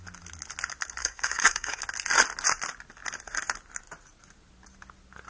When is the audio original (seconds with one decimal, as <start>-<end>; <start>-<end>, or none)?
0.0-1.0; 1.8-5.3